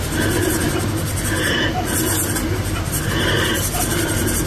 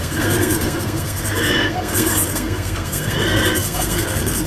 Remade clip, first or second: second